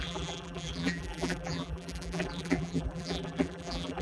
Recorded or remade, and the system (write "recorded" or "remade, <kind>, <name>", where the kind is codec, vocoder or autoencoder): remade, vocoder, BigVGAN v2